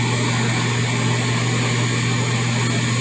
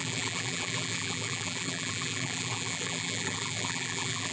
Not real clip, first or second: second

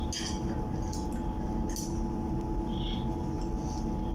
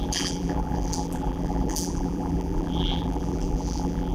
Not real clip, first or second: second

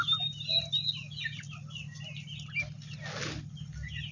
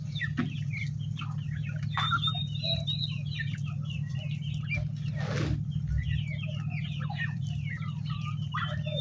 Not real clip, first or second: second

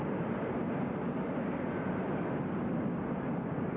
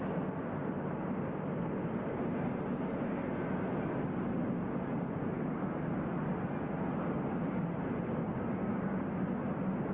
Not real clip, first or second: first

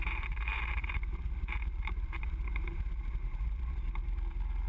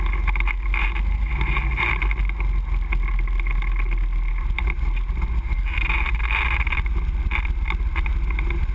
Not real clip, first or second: first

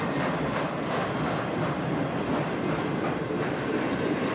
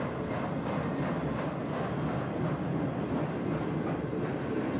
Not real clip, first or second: first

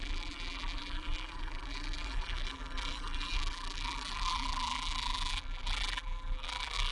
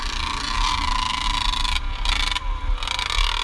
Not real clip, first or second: first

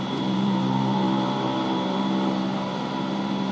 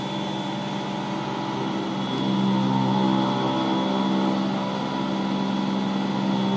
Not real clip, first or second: first